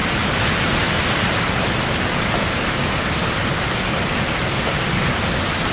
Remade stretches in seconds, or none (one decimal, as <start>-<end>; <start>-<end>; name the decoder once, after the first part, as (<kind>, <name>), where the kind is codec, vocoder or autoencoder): none